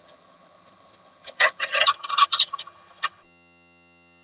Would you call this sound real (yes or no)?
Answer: no